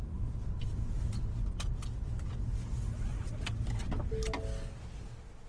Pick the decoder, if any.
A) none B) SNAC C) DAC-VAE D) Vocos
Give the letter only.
A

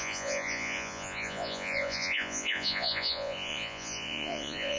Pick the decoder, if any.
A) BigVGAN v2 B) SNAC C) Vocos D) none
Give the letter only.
C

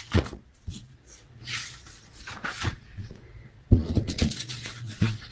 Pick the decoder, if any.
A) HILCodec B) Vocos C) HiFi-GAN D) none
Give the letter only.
B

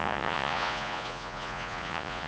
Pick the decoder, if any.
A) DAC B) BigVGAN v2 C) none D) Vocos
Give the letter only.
D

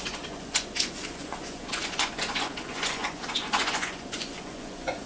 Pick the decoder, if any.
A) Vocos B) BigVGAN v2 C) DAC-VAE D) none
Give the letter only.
A